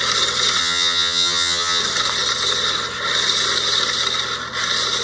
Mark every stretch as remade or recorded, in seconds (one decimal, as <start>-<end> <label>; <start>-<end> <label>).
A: 0.0-0.6 recorded; 0.6-1.8 remade; 1.8-5.0 recorded